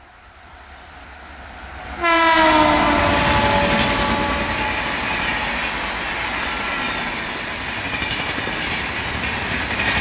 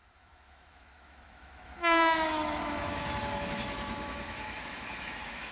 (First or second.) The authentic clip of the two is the first